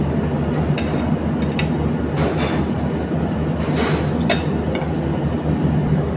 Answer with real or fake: real